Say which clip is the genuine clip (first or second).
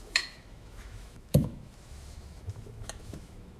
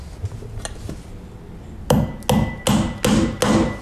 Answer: second